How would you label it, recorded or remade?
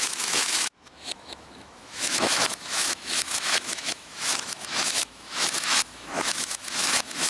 remade